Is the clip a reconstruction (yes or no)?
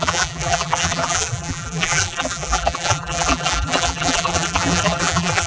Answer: yes